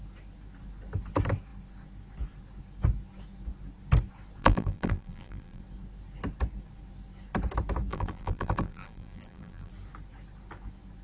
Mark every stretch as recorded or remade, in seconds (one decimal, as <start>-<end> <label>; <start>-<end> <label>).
0.0-4.4 recorded; 4.4-5.6 remade; 5.6-7.9 recorded; 7.9-9.7 remade; 9.7-11.0 recorded